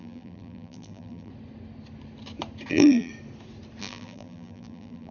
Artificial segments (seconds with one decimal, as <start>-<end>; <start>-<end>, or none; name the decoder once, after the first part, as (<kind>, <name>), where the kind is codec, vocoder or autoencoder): 0.0-1.3 (vocoder, BigVGAN v2); 2.7-3.1; 3.8-5.1